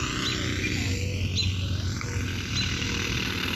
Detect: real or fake real